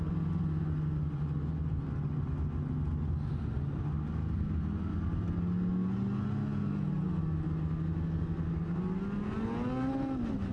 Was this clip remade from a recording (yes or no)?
no